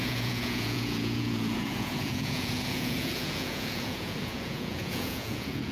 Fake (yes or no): yes